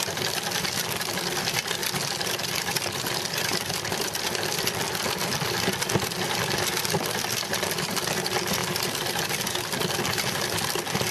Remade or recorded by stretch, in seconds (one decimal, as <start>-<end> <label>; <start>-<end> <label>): 0.0-11.1 recorded